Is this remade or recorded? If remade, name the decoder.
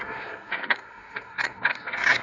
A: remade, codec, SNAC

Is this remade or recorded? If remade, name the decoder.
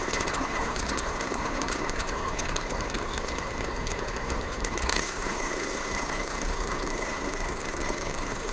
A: remade, codec, SNAC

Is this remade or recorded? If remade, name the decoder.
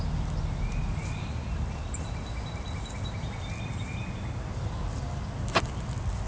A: recorded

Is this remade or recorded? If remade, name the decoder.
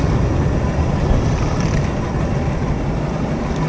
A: recorded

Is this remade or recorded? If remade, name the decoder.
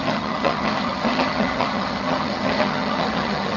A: remade, vocoder, HiFi-GAN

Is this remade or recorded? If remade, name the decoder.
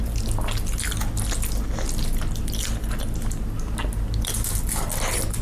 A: recorded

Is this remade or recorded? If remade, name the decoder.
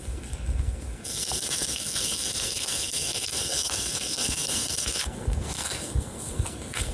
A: remade, codec, SNAC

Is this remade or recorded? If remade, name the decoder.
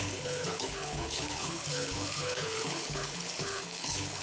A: remade, codec, HILCodec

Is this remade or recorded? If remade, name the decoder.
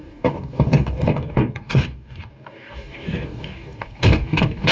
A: remade, codec, DAC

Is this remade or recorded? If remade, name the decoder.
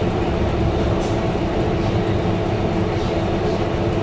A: recorded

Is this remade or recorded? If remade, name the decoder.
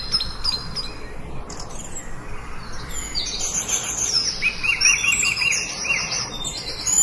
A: recorded